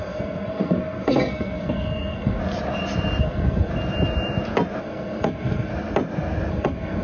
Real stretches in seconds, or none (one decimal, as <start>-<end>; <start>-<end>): 2.4-3.2; 3.7-4.8; 5.7-6.5